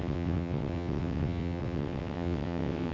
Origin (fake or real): fake